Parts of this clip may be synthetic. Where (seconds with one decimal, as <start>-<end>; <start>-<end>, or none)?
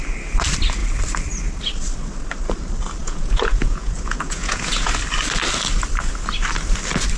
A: 3.0-4.9